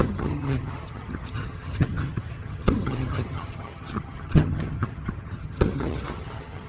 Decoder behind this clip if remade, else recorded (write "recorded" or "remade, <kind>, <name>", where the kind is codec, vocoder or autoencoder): remade, vocoder, HiFi-GAN